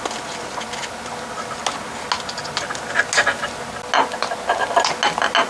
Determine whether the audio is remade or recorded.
recorded